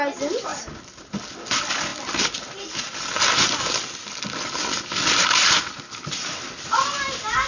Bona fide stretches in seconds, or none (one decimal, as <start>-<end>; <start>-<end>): 0.0-7.5